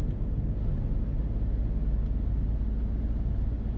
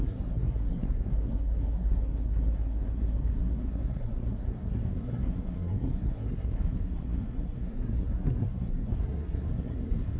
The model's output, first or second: second